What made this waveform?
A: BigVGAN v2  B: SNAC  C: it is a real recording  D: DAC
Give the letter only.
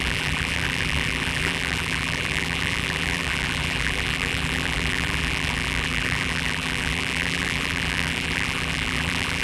A